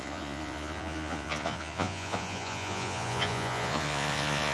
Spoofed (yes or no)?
yes